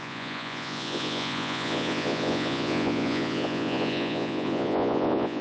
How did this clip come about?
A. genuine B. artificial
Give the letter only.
B